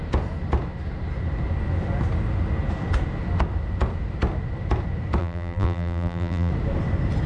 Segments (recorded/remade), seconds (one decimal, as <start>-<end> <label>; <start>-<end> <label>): 0.0-5.2 recorded; 5.2-6.5 remade; 6.5-7.3 recorded

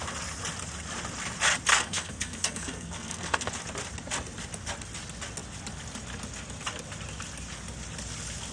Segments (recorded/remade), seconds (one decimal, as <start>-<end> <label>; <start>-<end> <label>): 0.0-1.7 recorded; 1.7-3.5 remade; 3.5-8.5 recorded

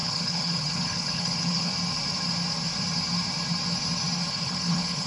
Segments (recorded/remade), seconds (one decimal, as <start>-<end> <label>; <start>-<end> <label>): 0.0-1.7 remade; 1.7-4.3 recorded; 4.3-5.1 remade